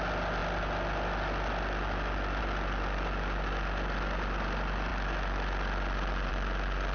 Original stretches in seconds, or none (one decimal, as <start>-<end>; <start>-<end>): 0.0-6.9